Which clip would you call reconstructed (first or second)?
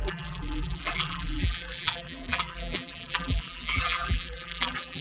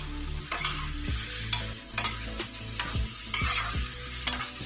first